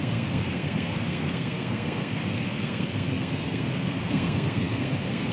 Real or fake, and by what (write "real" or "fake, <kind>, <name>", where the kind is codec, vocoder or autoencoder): fake, codec, SNAC